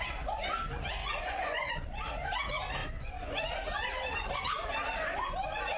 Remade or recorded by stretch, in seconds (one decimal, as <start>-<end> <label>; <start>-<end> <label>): 0.0-1.0 recorded; 1.0-1.7 remade; 1.7-2.8 recorded; 2.8-3.4 remade; 3.4-5.8 recorded